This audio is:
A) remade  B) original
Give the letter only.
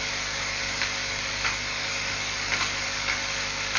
A